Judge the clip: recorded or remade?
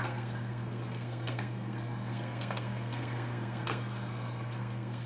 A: remade